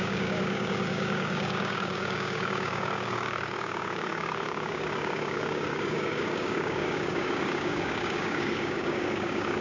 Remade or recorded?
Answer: remade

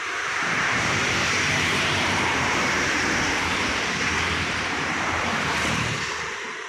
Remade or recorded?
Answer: remade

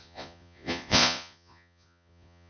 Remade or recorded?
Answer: remade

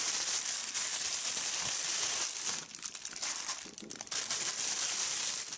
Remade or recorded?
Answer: remade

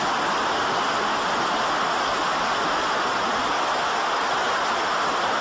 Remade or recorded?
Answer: recorded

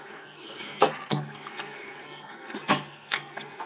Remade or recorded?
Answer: remade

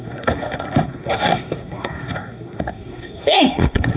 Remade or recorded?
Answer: remade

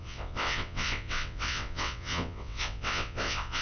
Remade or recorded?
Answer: remade